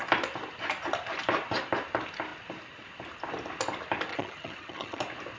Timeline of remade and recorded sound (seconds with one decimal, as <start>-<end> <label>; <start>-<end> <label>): 0.0-4.1 recorded; 4.1-5.0 remade; 5.0-5.4 recorded